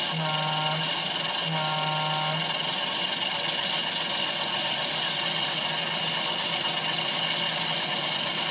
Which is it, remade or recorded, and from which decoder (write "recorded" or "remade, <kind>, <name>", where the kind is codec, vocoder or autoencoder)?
recorded